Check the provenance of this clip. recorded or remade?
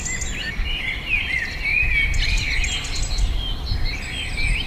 recorded